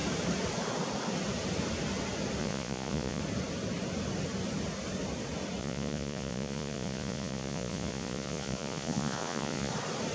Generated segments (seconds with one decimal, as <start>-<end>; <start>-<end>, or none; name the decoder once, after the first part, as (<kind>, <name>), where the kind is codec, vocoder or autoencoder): 2.4-3.2 (vocoder, Vocos); 5.6-9.7